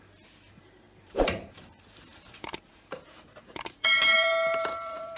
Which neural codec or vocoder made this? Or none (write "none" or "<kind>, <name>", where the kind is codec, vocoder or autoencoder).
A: vocoder, BigVGAN v2